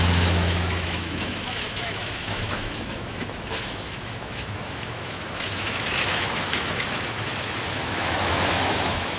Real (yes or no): no